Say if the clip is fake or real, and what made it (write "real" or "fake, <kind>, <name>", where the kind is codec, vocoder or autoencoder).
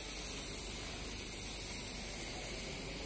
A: real